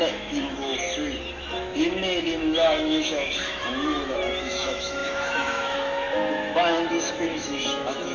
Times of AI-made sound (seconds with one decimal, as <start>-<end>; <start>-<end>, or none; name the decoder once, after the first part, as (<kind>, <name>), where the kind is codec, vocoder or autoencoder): 0.0-0.7 (autoencoder, DAC-VAE); 1.3-8.1